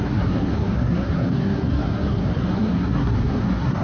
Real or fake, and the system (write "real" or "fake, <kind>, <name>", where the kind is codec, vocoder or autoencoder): fake, codec, SNAC